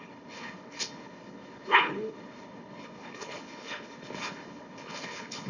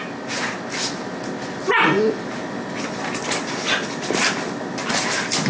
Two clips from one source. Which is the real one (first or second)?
second